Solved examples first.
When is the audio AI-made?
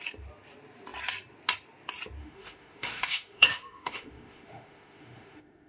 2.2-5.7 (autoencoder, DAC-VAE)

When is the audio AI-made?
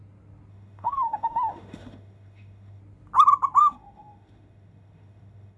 0.5-2.8 (autoencoder, DAC-VAE); 3.6-5.6